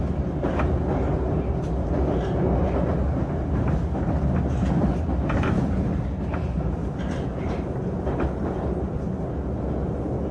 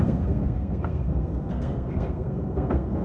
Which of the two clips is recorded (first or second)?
first